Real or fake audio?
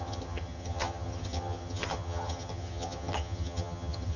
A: fake